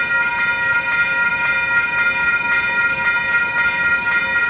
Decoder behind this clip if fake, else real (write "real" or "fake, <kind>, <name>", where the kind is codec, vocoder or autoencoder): real